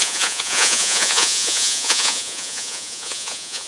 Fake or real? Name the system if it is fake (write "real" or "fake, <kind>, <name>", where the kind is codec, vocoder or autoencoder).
fake, vocoder, Vocos